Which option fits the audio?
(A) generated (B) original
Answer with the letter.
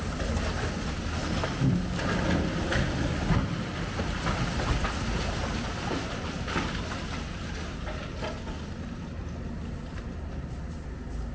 B